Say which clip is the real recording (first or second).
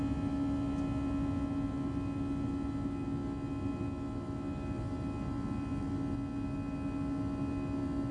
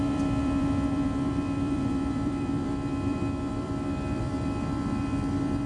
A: first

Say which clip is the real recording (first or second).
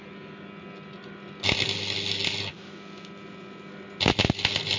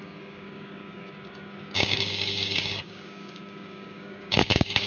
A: first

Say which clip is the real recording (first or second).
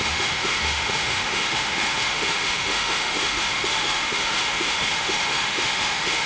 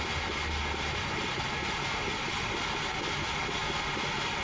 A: second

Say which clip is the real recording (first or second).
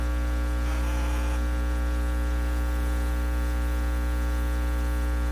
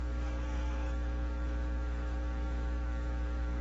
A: first